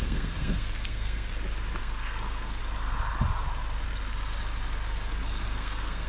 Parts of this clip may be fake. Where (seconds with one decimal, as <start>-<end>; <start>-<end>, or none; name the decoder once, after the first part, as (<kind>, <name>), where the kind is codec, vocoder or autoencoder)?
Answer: 0.0-1.3 (codec, SNAC); 1.8-2.6; 5.4-6.1